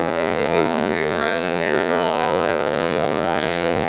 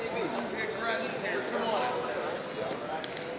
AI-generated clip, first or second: first